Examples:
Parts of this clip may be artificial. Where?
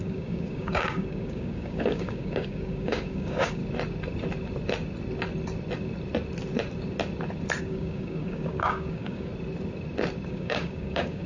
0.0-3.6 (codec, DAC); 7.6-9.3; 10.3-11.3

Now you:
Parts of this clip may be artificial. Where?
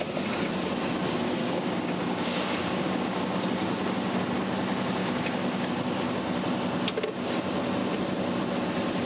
1.4-4.2 (codec, DAC); 5.0-5.7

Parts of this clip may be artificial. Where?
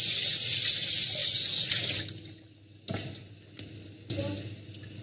none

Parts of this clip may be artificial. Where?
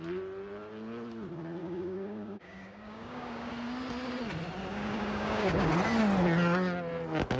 1.6-3.5 (codec, DAC); 4.7-5.7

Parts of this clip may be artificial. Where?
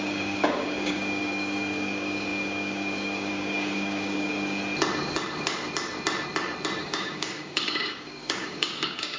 0.0-4.6 (codec, DAC); 6.8-9.2